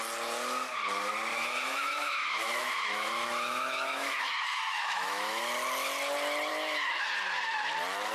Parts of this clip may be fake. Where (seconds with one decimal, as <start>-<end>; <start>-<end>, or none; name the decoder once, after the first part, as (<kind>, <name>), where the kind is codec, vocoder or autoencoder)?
1.3-5.4 (autoencoder, DAC-VAE); 6.5-7.1